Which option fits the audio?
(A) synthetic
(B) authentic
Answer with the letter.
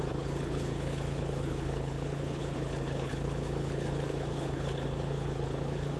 A